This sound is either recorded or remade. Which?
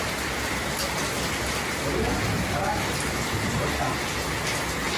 recorded